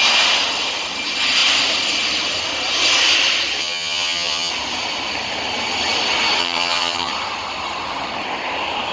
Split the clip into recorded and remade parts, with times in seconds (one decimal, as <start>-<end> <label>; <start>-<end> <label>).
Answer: 0.0-3.6 recorded; 3.6-4.5 remade; 4.5-6.4 recorded; 6.4-7.1 remade; 7.1-8.9 recorded